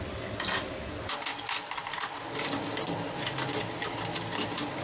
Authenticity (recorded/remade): recorded